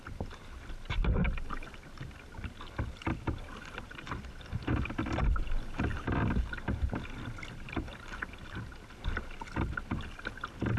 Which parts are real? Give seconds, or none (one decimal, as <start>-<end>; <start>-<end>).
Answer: 0.0-10.8

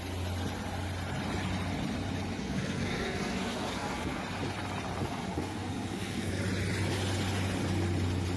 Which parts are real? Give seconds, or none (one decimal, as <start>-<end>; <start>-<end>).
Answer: 0.0-2.4; 4.2-5.0; 6.4-8.4

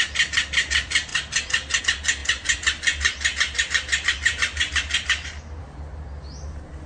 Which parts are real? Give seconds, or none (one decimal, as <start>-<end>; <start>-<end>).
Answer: 0.0-6.9

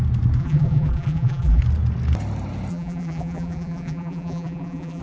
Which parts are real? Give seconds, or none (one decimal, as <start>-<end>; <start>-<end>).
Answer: 0.0-0.4; 1.6-2.7

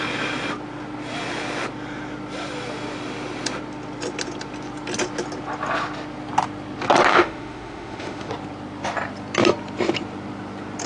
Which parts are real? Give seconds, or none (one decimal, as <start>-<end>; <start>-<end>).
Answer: 0.0-7.1; 8.3-10.9

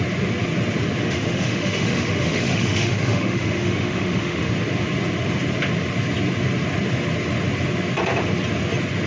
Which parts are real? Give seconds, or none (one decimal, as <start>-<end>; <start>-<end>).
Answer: 0.0-1.0; 4.5-9.1

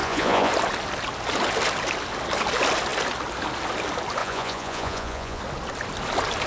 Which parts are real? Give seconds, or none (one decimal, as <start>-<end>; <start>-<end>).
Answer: 0.5-4.2; 5.4-6.5